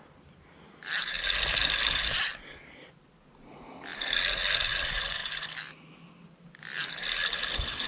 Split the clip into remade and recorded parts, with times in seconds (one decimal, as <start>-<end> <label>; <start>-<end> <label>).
0.0-7.9 recorded